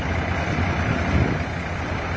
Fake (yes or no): yes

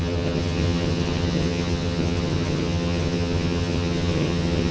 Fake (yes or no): yes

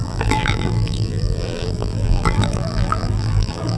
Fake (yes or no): yes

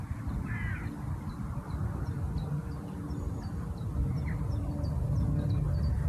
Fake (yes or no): no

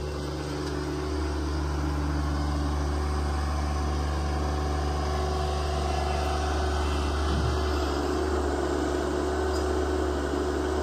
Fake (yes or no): no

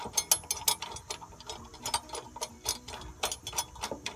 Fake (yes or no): no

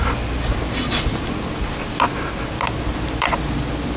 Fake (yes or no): no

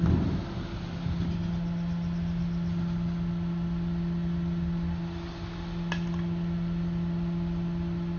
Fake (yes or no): no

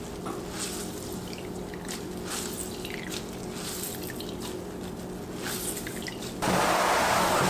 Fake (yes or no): no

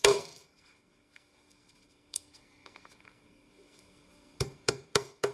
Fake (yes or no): yes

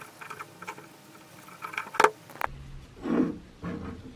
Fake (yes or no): no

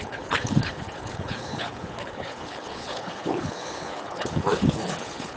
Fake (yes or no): yes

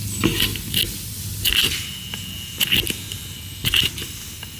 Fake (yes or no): no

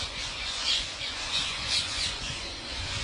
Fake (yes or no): yes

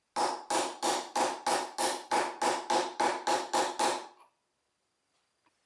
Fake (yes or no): no